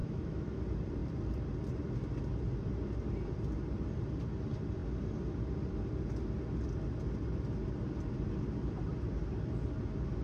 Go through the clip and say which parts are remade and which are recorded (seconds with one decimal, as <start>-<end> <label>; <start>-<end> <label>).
0.0-0.6 remade; 0.6-10.2 recorded